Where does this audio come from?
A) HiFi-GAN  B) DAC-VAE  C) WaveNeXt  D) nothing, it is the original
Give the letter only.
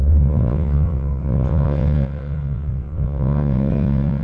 C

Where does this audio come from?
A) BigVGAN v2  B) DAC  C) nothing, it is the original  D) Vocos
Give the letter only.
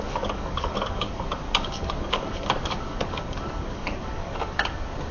B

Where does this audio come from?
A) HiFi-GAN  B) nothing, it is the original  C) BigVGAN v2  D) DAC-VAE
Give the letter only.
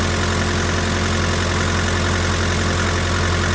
B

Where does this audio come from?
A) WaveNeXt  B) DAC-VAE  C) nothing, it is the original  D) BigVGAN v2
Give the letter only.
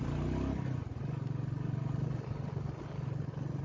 C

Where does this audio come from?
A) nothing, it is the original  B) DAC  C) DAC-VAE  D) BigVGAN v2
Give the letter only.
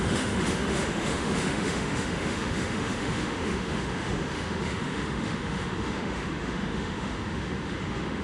C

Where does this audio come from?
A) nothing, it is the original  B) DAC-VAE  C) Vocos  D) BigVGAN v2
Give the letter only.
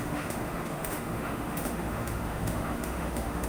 B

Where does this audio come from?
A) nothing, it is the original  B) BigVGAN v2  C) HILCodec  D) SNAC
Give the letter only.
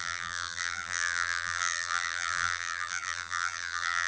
B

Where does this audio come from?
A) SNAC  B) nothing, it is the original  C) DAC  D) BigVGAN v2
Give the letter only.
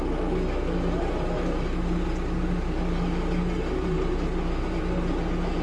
B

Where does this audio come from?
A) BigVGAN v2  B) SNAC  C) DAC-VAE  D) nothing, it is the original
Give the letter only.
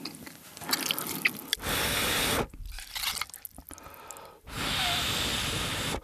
D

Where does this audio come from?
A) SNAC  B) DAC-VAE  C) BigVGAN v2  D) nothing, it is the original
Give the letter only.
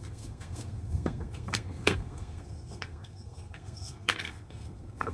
A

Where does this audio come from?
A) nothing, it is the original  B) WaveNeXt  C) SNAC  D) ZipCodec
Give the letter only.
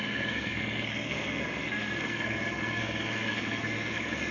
C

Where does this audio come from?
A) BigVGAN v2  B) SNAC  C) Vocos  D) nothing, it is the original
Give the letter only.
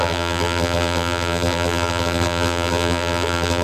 A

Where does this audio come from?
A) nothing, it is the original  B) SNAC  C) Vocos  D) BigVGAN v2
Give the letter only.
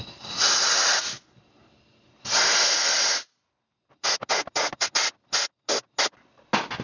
A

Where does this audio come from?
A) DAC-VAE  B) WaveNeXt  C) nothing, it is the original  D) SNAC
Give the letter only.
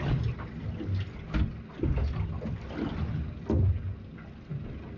C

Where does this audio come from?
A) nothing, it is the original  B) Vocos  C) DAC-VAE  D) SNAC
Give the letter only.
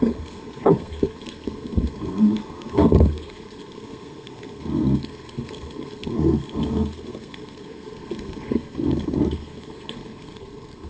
D